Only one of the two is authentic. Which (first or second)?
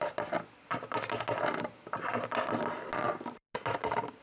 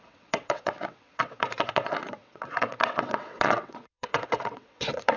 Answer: first